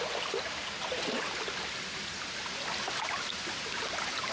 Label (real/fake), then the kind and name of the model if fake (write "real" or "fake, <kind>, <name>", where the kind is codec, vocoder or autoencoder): real